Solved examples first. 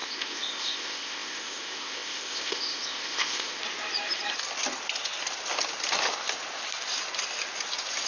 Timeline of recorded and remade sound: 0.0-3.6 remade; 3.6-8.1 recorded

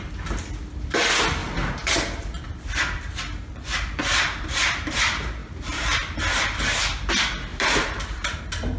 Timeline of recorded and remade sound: 0.0-1.4 recorded; 1.4-2.4 remade; 2.4-5.4 recorded; 5.4-6.2 remade; 6.2-7.5 recorded; 7.5-8.4 remade; 8.4-8.8 recorded

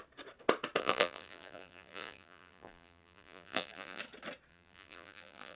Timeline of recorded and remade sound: 0.0-0.8 recorded; 0.8-4.0 remade; 4.0-4.5 recorded; 4.5-5.6 remade

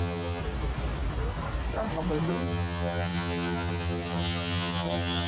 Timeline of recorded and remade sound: 0.0-0.4 remade; 0.4-2.3 recorded; 2.3-5.3 remade

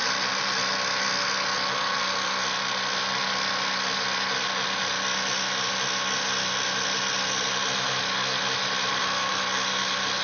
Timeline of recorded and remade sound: 0.0-10.2 recorded

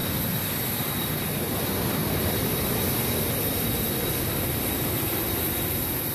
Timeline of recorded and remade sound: 0.0-6.1 recorded